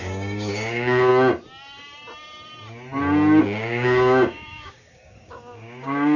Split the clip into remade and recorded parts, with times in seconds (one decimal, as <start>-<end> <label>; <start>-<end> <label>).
0.0-1.1 remade; 1.1-3.4 recorded; 3.4-6.2 remade